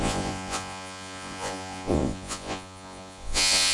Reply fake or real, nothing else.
fake